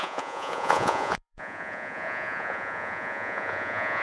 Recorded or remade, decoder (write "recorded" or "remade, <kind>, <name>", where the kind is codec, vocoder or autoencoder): remade, vocoder, Vocos